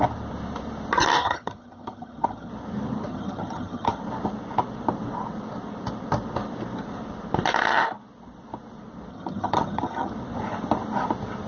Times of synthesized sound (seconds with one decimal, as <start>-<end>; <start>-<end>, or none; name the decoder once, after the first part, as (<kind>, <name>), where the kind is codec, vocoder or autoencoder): 1.2-2.5 (vocoder, HiFi-GAN); 3.1-4.0; 9.1-10.1